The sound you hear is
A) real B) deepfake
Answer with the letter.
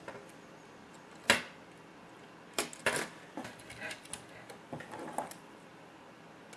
A